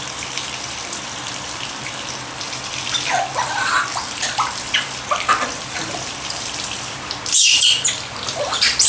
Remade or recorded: remade